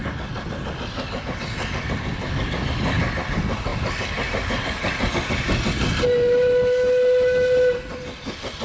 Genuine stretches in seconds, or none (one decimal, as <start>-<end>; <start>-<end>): 0.0-8.6